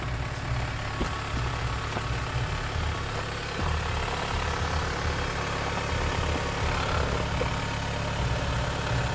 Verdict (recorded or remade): recorded